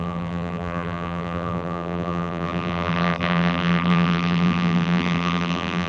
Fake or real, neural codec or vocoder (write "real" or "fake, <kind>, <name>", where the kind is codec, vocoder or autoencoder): fake, vocoder, BigVGAN v2